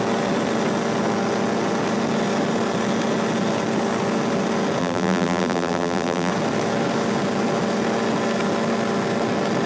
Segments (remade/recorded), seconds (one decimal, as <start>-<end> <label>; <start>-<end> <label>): 0.0-4.8 recorded; 4.8-6.3 remade; 6.3-9.7 recorded